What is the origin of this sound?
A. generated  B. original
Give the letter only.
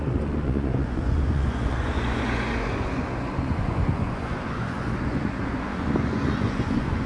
A